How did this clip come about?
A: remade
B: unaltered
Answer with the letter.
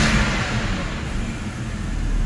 B